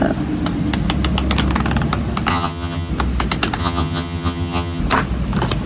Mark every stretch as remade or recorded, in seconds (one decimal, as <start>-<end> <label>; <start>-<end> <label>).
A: 0.0-2.3 recorded; 2.3-2.9 remade; 2.9-3.6 recorded; 3.6-4.8 remade; 4.8-5.7 recorded